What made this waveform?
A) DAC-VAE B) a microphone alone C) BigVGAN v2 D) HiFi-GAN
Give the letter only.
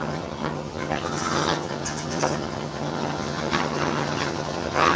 D